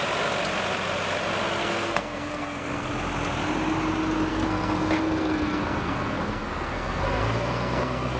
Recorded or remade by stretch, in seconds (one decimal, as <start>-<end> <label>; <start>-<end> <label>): 0.0-1.6 recorded; 1.6-2.9 remade; 2.9-4.3 recorded; 4.3-8.2 remade